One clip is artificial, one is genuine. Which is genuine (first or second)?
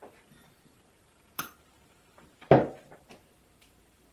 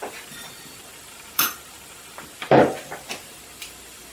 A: second